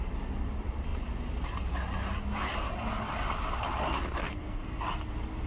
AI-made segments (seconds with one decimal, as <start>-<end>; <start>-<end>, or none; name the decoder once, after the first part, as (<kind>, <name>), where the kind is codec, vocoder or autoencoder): 4.2-4.8 (codec, SNAC)